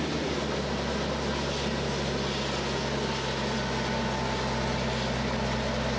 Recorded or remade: recorded